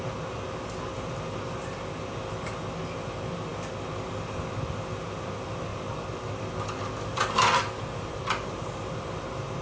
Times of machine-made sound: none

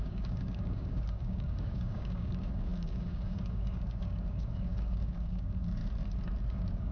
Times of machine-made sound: 0.0-5.8 (codec, DAC); 6.5-6.9

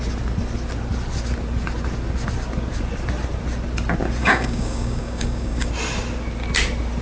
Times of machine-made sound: 4.2-5.7 (codec, DAC)

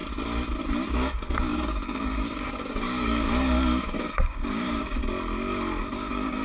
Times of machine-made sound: 0.9-5.0 (codec, DAC); 5.8-6.4

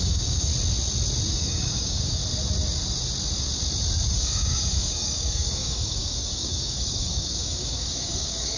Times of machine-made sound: 0.0-0.5 (codec, DAC); 1.3-2.2; 4.1-8.6

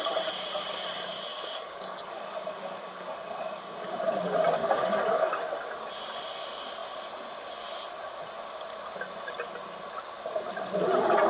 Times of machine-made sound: 1.3-4.0 (codec, DAC); 4.6-5.3

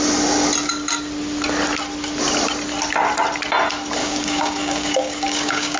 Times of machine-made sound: 4.0-5.8 (codec, DAC)